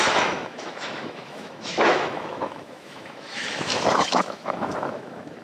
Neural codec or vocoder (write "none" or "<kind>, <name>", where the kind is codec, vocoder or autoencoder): autoencoder, DAC-VAE